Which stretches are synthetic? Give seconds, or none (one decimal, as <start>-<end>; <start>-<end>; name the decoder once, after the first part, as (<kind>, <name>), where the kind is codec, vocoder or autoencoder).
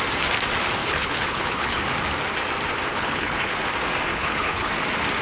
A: 0.8-1.8 (codec, HILCodec); 2.9-3.6; 4.1-4.7